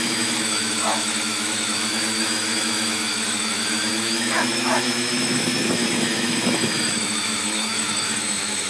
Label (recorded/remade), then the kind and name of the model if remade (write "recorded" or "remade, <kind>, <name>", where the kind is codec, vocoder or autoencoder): remade, autoencoder, DAC-VAE